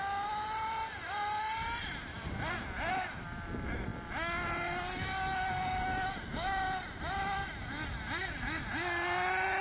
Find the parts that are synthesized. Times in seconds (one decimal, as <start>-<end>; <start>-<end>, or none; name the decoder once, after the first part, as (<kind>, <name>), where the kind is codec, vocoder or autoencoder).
none